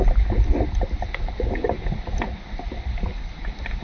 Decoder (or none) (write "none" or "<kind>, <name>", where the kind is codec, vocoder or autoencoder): none